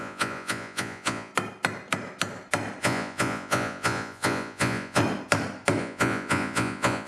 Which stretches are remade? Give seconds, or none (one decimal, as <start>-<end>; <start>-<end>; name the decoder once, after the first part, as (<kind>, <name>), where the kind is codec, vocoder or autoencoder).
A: 0.0-1.3 (vocoder, Vocos); 2.8-5.0; 5.8-7.1